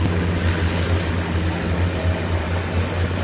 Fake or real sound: real